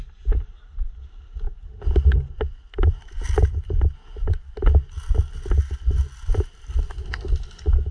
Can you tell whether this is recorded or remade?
recorded